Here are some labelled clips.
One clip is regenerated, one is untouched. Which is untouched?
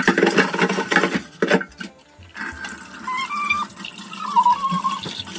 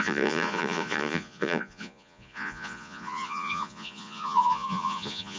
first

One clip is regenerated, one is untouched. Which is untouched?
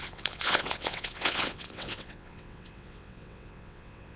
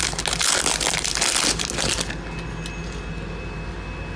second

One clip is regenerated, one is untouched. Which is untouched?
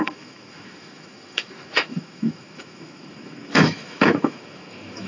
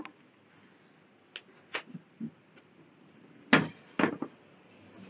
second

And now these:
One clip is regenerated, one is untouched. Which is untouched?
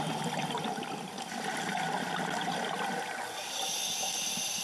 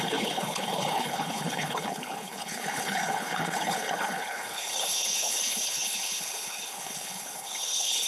first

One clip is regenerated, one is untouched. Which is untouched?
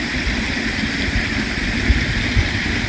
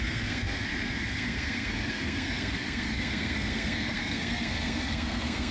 first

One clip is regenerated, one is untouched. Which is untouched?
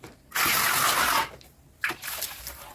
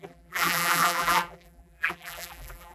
first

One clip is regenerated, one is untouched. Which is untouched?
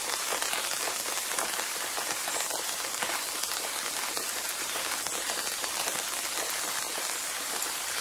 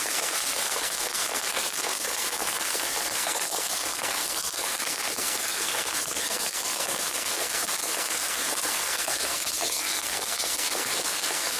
first